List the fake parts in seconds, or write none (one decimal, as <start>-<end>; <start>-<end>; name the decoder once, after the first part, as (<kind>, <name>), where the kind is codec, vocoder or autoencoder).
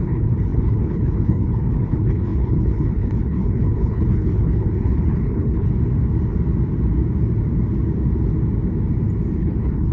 0.0-5.7 (codec, HILCodec); 9.4-9.9